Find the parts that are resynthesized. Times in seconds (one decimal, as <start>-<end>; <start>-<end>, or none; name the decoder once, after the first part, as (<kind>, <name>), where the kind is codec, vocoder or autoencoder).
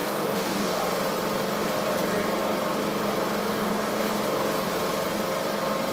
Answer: 0.0-0.8 (codec, DAC); 3.4-4.1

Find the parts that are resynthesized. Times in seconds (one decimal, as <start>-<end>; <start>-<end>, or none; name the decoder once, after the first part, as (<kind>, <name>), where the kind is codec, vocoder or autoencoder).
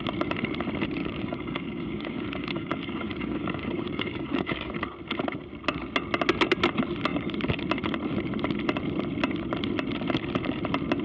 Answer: 1.0-4.7 (codec, DAC)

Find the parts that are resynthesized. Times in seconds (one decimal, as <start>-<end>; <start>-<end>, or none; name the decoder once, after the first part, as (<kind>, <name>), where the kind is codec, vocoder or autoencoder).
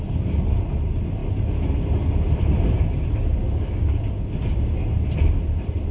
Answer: 3.4-4.4 (codec, DAC)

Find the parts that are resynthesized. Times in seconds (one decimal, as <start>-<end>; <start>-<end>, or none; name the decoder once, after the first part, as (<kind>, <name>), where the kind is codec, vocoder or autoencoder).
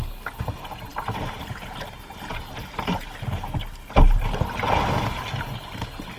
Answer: none